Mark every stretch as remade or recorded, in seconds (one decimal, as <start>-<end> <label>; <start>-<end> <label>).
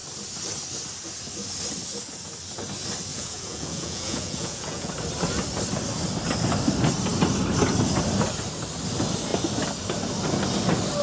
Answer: 0.0-3.1 recorded; 3.1-4.9 remade; 4.9-11.0 recorded